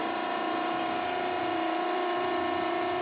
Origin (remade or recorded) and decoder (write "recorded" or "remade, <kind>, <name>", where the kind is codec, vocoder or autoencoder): remade, vocoder, BigVGAN v2